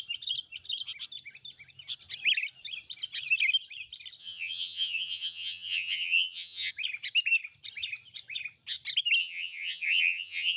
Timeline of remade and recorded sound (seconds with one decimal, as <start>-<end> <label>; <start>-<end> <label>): 0.0-4.2 recorded; 4.2-6.7 remade; 6.7-9.2 recorded; 9.2-10.6 remade